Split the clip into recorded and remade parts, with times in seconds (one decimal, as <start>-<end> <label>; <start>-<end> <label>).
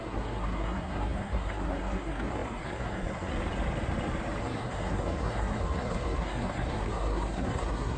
0.0-3.3 remade; 3.3-4.4 recorded; 4.4-8.0 remade